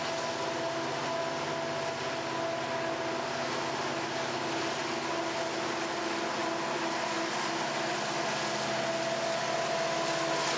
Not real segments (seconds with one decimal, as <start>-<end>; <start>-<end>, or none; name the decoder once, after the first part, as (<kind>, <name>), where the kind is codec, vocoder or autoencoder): none